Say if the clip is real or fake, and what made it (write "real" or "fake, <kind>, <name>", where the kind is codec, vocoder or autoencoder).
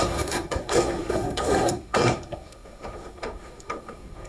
fake, codec, SNAC